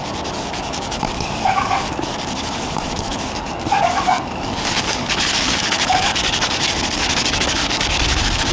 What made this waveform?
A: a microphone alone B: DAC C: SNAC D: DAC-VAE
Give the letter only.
B